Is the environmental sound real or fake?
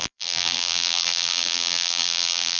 fake